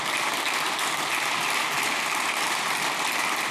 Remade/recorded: recorded